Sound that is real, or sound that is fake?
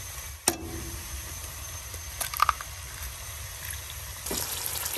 real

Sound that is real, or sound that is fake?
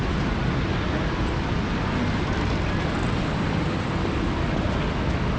real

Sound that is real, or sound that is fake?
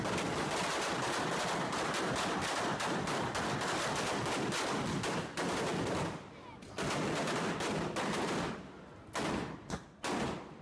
real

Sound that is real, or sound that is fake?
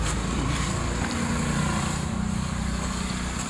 fake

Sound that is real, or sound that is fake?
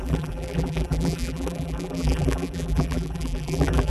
fake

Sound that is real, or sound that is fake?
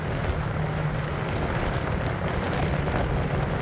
real